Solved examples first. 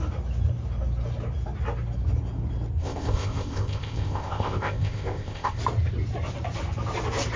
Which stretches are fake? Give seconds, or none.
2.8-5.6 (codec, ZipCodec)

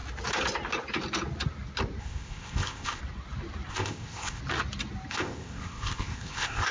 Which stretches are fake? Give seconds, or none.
2.0-3.0 (codec, ZipCodec); 3.7-4.4; 5.1-6.7